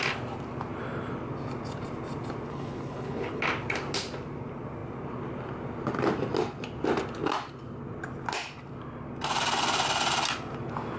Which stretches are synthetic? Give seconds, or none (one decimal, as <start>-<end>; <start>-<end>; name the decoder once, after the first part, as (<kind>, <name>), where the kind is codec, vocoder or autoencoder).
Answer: 2.5-3.4 (codec, HILCodec)